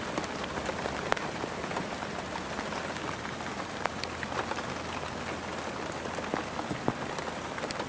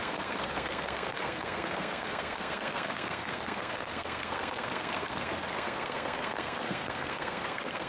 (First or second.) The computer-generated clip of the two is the second